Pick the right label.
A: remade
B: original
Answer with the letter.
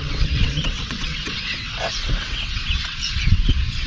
A